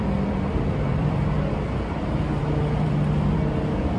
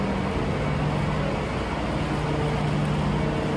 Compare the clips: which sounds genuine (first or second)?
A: second